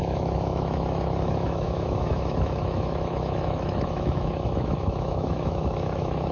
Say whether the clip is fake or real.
fake